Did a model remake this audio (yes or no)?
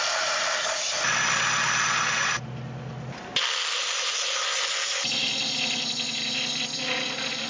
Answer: no